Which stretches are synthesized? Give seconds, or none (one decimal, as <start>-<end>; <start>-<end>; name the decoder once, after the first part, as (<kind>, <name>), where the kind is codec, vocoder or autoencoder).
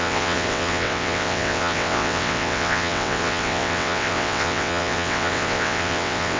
0.0-6.4 (vocoder, WaveNeXt)